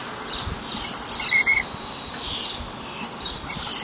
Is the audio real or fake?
real